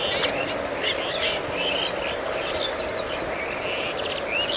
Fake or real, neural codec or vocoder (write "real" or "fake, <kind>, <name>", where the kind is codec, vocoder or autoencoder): real